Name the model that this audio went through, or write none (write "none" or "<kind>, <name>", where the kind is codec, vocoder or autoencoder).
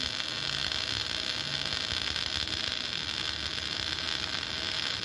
none